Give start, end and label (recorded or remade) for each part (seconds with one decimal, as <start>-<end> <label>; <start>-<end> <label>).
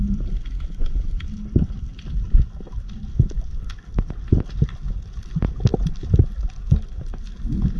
0.0-7.8 recorded